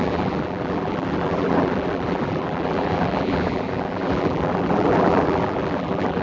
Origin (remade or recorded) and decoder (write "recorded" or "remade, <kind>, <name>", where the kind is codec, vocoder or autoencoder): remade, vocoder, BigVGAN v2